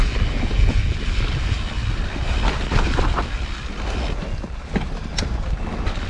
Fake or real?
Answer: real